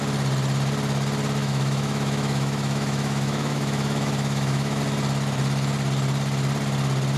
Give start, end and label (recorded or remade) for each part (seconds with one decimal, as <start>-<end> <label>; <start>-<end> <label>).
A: 0.0-1.4 recorded; 1.4-4.8 remade; 4.8-7.2 recorded